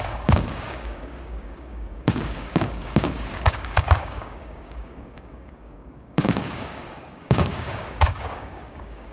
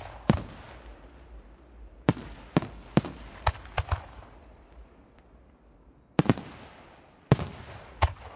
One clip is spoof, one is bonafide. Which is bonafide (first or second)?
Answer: second